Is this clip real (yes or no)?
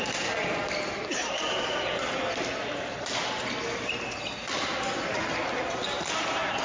yes